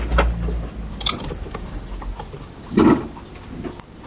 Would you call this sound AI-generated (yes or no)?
no